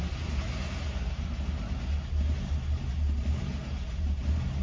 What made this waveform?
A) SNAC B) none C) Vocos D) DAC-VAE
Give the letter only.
B